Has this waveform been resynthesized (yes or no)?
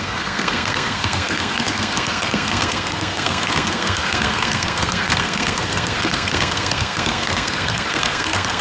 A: yes